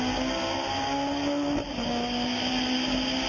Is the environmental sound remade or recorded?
recorded